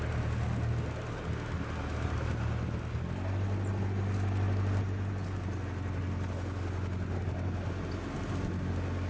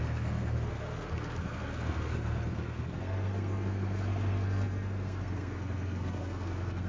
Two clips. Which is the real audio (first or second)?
first